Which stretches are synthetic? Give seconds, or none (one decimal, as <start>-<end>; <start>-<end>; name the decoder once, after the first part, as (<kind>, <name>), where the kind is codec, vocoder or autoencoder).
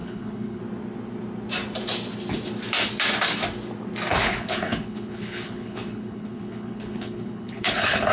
0.0-0.6 (codec, HILCodec); 4.1-8.1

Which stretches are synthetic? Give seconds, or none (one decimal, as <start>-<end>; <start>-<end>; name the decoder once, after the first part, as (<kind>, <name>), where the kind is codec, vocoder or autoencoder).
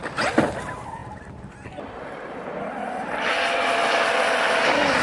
none